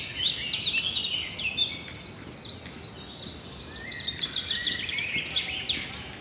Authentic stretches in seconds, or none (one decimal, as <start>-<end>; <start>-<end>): 0.0-6.2

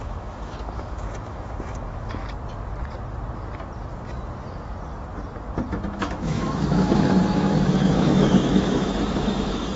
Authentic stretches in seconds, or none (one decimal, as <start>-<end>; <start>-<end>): 2.2-5.7

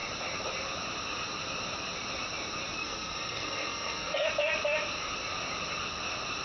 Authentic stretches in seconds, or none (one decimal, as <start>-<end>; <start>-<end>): 0.0-2.8; 4.3-6.4

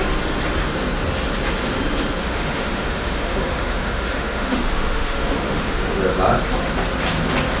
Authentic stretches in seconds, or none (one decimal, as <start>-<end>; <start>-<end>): 0.0-2.2; 6.0-7.6

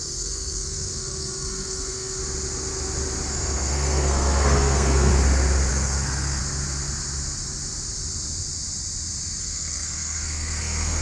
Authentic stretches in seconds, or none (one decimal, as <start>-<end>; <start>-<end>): 2.2-3.3; 5.1-5.7; 6.4-9.4